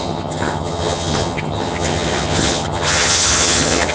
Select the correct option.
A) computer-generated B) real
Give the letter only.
A